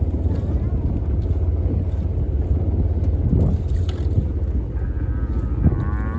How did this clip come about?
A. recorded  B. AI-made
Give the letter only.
A